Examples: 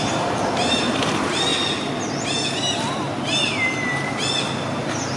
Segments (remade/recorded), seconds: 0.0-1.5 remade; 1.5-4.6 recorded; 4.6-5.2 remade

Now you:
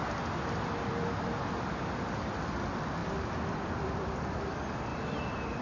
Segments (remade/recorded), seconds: 0.0-2.3 remade; 2.3-3.0 recorded; 3.0-4.5 remade; 4.5-4.9 recorded; 4.9-5.6 remade

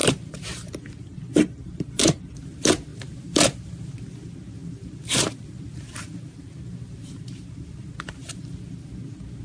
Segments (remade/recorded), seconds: 0.0-2.2 remade; 2.2-2.9 recorded; 2.9-3.9 remade; 3.9-4.6 recorded; 4.6-8.6 remade; 8.6-9.4 recorded

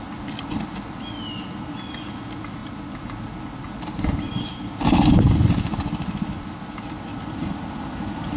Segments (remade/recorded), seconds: 0.0-2.6 recorded; 2.6-4.8 remade; 4.8-7.1 recorded; 7.1-8.4 remade

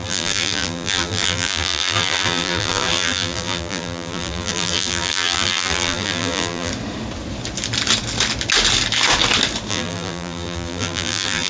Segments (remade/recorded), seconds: 0.0-6.7 remade; 6.7-9.7 recorded; 9.7-11.5 remade